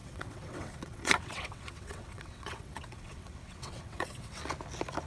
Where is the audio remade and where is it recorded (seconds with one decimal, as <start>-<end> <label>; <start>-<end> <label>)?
0.0-4.4 remade; 4.4-5.1 recorded